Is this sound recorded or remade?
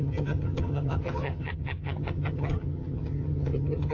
remade